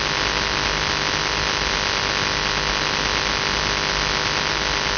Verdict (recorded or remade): recorded